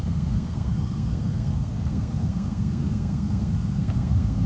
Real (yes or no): no